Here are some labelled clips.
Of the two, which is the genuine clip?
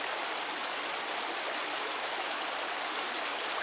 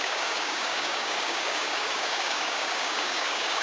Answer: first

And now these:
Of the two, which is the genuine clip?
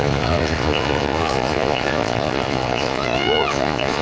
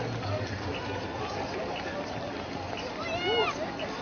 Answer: second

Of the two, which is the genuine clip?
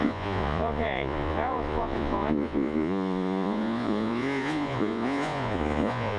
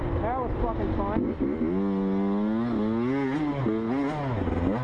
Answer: second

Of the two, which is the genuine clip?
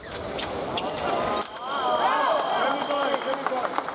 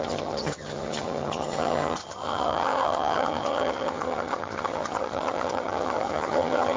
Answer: first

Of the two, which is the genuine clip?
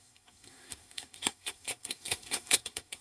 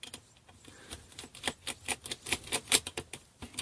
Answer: second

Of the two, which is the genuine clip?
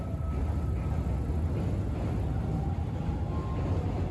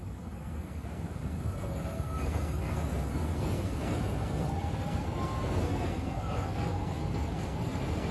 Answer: first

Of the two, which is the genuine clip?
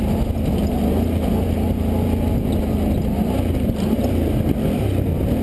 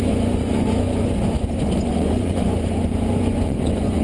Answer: first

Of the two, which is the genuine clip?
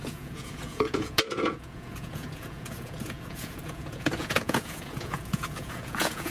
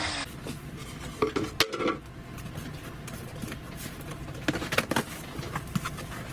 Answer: second